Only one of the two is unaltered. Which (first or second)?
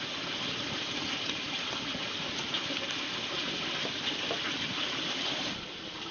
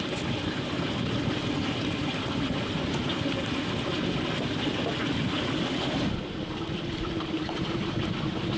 second